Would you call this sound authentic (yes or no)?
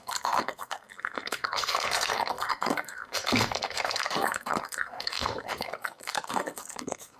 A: no